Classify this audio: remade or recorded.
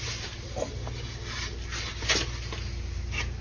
recorded